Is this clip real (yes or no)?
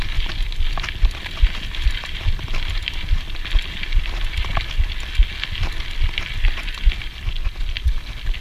yes